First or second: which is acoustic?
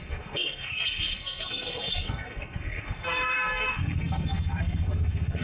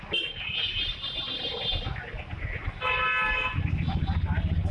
second